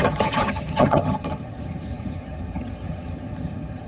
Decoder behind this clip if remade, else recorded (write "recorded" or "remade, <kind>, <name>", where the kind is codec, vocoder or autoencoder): remade, vocoder, HiFi-GAN